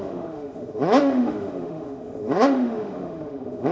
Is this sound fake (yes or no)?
yes